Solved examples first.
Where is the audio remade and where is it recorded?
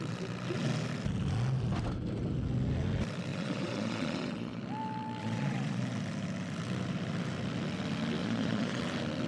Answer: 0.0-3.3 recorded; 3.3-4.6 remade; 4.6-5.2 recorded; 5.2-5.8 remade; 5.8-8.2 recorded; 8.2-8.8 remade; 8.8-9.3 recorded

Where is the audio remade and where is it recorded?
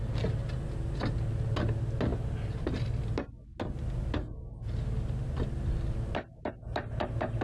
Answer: 0.0-2.1 recorded; 2.1-3.0 remade; 3.0-7.4 recorded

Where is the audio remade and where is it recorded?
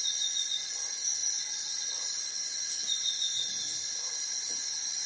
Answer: 0.0-5.1 recorded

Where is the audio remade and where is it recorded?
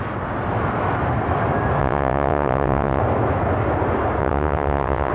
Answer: 0.0-1.8 recorded; 1.8-3.0 remade; 3.0-4.2 recorded; 4.2-5.1 remade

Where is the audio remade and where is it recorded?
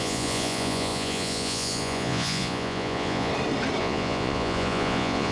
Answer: 0.0-3.3 remade; 3.3-3.8 recorded; 3.8-5.3 remade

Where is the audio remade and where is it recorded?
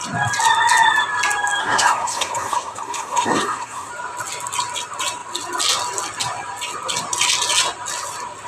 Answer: 0.0-1.6 recorded; 1.6-3.9 remade; 3.9-8.5 recorded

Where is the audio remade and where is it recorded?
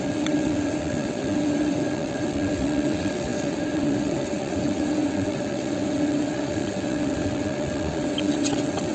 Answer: 0.0-8.9 remade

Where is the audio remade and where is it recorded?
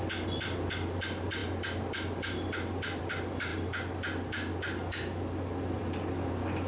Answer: 0.0-6.7 recorded